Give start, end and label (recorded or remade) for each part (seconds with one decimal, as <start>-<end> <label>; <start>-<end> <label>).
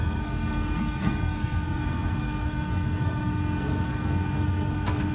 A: 0.0-5.1 remade